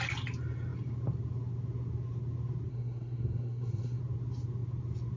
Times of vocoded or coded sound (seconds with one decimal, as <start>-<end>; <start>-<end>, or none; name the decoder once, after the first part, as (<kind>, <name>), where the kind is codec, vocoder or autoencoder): 2.7-4.0 (codec, SNAC)